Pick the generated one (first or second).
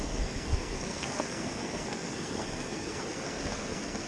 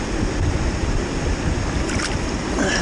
first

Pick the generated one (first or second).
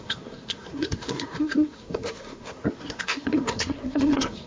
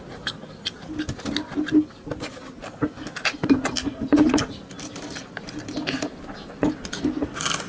first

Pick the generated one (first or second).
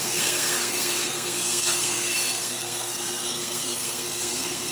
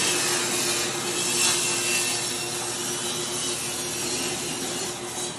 first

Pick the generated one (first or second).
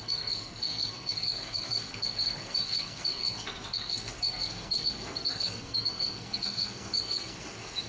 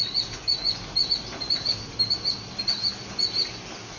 first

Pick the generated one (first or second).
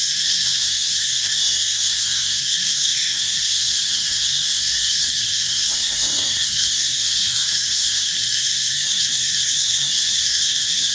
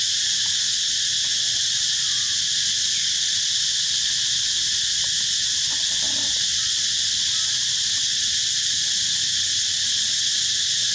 first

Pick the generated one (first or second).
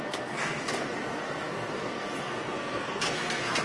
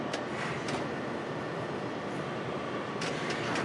first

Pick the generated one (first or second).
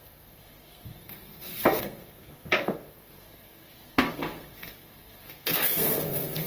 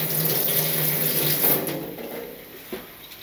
first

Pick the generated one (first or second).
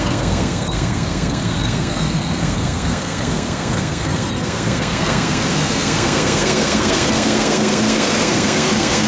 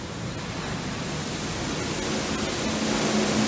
first